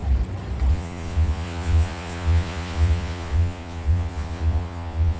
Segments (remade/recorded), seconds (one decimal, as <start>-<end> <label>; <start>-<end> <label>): 0.0-0.7 recorded; 0.7-5.2 remade